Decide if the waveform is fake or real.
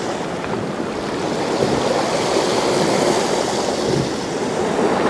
real